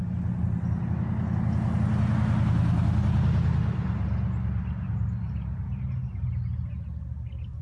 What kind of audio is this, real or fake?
real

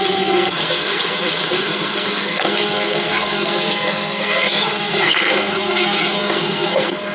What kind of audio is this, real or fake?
fake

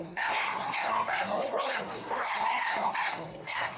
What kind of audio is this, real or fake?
fake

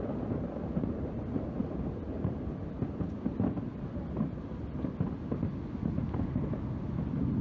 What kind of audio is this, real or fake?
real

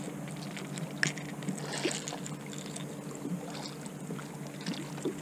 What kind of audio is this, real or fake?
real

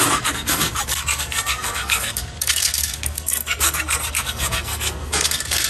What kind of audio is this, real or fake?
fake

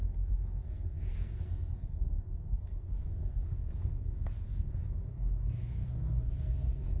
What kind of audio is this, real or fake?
fake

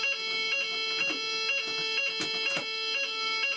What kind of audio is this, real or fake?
real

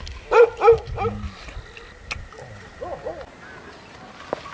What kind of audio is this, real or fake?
real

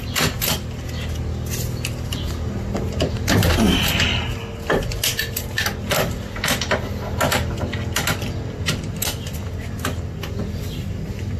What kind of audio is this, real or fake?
real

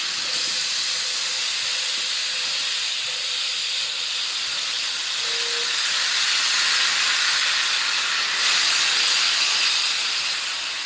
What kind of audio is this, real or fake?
real